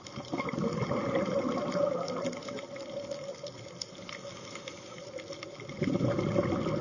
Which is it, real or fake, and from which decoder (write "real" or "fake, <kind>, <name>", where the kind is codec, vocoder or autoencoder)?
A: real